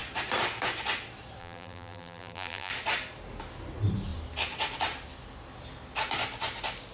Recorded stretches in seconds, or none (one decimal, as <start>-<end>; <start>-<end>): 0.0-1.4; 2.7-6.9